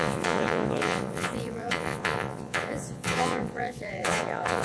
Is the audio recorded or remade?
remade